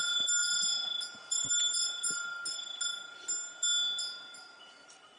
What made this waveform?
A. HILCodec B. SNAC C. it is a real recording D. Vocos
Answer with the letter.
C